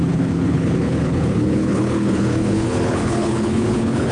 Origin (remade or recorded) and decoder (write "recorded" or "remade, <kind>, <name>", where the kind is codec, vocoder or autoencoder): remade, codec, HILCodec